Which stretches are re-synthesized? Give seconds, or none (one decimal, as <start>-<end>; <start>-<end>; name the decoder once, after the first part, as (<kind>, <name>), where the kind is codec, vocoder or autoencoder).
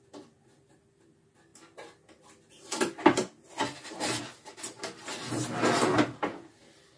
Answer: none